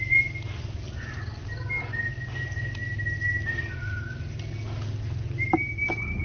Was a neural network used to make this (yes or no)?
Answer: no